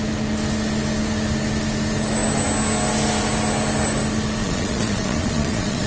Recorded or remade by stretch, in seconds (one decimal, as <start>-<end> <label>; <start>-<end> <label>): 0.0-4.4 recorded; 4.4-5.9 remade